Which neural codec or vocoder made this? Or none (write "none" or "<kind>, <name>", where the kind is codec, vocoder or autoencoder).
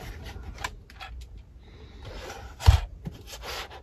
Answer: none